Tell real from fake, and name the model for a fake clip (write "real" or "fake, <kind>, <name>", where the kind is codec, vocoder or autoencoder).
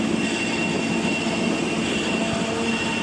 real